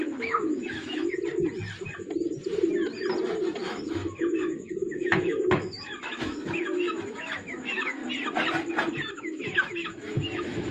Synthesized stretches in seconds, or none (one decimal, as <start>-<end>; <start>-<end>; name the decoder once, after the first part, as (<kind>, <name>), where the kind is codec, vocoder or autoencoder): 0.0-1.0 (autoencoder, DAC-VAE); 3.6-8.0; 9.1-10.7